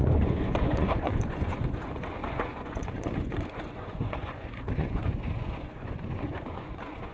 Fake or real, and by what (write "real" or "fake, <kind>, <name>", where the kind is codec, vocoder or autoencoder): fake, vocoder, Vocos